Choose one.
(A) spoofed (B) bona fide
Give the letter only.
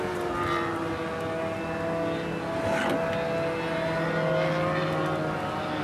B